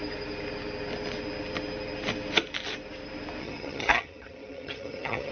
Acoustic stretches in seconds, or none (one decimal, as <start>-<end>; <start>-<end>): 0.0-3.4